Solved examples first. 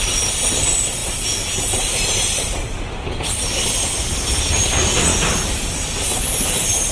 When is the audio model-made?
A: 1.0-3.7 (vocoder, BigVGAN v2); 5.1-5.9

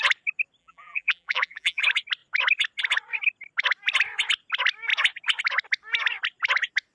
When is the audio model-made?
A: 0.6-1.8 (vocoder, BigVGAN v2)

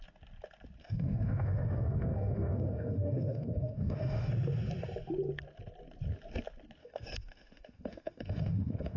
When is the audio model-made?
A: 0.8-4.3 (autoencoder, DAC-VAE); 6.8-9.0

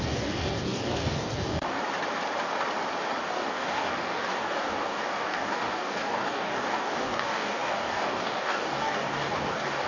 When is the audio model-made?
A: 0.0-1.8 (codec, DAC); 3.2-9.9

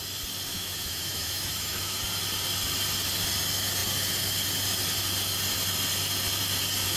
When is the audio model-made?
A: 0.5-2.0 (autoencoder, DAC-VAE)